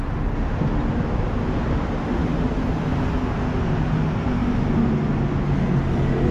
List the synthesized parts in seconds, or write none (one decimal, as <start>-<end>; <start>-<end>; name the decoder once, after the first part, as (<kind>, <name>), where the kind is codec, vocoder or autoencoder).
none